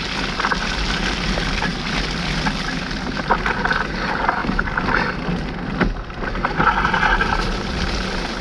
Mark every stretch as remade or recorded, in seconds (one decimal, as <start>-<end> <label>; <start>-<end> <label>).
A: 0.0-8.4 recorded